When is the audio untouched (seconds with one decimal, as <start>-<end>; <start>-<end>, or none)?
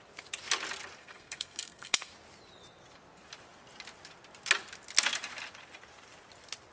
0.0-1.0; 2.1-6.7